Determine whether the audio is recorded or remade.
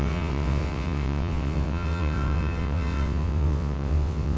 remade